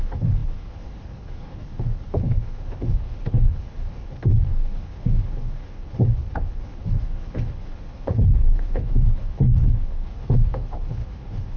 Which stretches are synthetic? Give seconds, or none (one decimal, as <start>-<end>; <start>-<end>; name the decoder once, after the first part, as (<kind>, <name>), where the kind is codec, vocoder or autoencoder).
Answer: 0.0-11.6 (codec, HILCodec)